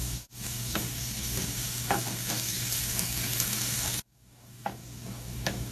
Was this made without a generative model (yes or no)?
no